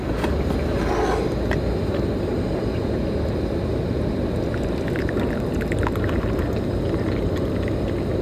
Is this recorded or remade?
recorded